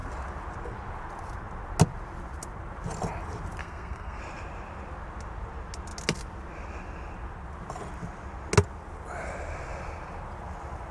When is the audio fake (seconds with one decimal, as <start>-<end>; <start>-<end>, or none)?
3.6-4.2